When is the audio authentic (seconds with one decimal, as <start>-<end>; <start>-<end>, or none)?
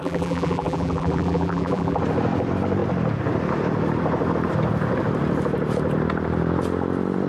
2.0-7.3